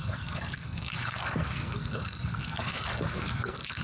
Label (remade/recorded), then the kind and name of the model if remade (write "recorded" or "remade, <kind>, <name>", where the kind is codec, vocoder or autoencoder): remade, codec, SNAC